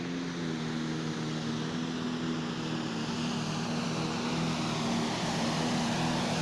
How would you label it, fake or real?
real